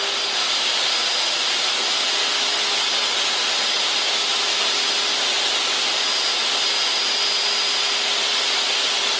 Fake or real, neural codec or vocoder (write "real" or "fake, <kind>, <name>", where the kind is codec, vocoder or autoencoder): real